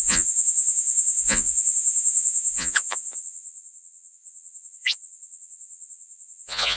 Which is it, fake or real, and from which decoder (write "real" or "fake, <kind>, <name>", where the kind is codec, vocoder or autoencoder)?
fake, vocoder, Vocos